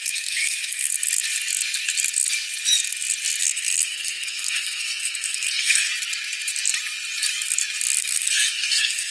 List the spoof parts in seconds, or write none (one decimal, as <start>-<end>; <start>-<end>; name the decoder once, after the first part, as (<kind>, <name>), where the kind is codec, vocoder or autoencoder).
0.0-0.9 (codec, SNAC); 3.4-5.9; 8.0-9.1